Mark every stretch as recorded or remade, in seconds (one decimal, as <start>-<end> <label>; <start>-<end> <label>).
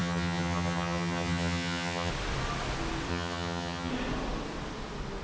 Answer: 0.0-2.1 remade; 2.1-3.1 recorded; 3.1-3.9 remade; 3.9-5.2 recorded